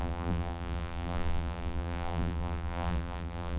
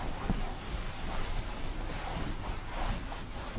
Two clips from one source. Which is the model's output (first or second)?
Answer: first